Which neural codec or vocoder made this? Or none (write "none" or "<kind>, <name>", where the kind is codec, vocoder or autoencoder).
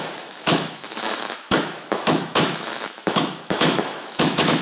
autoencoder, DAC-VAE